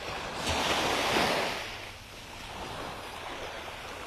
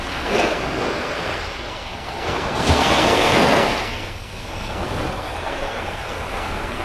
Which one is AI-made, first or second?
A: second